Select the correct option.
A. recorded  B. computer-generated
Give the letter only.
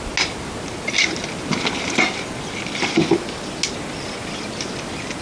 A